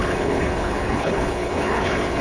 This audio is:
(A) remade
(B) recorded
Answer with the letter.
A